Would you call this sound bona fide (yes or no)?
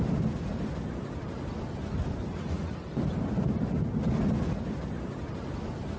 yes